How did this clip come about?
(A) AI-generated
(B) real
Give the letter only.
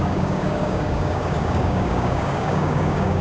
A